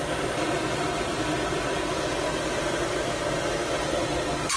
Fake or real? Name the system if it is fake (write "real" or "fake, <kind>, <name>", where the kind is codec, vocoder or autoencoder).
fake, vocoder, BigVGAN v2